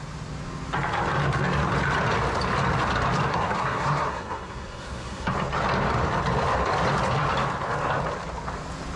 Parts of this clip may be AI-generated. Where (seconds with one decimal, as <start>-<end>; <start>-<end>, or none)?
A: 3.3-5.3